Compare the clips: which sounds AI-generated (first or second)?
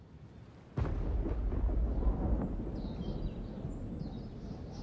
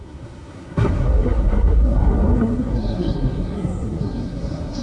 second